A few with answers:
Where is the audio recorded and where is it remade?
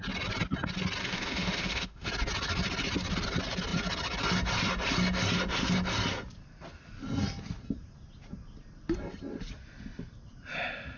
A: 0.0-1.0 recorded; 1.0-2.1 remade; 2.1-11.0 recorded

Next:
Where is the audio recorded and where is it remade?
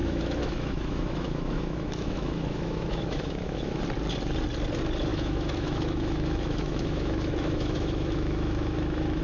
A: 0.0-3.8 remade; 3.8-5.1 recorded; 5.1-9.2 remade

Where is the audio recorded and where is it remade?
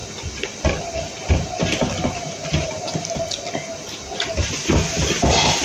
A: 0.0-5.6 recorded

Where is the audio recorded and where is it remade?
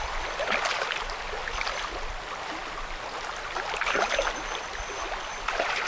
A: 0.0-5.9 recorded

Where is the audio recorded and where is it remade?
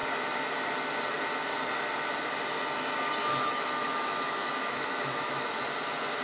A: 0.0-3.2 recorded; 3.2-5.6 remade; 5.6-6.2 recorded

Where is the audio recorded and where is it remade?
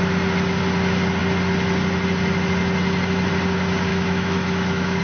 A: 0.0-3.9 recorded; 3.9-5.0 remade